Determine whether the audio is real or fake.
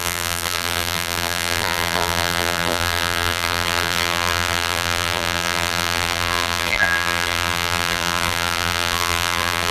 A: fake